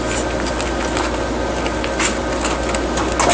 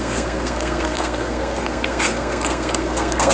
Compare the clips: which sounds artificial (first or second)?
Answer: second